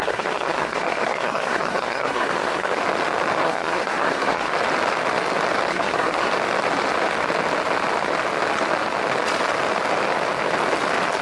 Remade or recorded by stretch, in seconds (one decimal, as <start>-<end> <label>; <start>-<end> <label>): 0.0-2.8 remade; 2.8-3.4 recorded; 3.4-4.5 remade; 4.5-5.7 recorded; 5.7-6.3 remade; 6.3-11.2 recorded